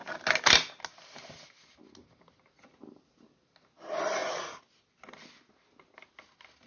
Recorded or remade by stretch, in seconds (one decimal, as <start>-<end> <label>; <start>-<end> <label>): 0.0-6.7 recorded